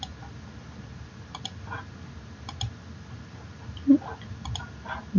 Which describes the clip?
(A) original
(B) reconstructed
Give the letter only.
A